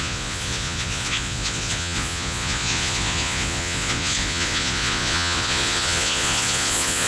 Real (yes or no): no